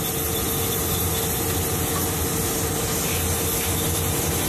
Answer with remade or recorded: recorded